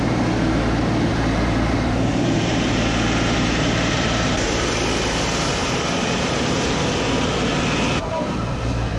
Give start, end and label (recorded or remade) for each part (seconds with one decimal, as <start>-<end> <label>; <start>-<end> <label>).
0.0-1.1 recorded; 1.1-4.7 remade; 4.7-5.6 recorded; 5.6-6.8 remade; 6.8-8.0 recorded; 8.0-9.0 remade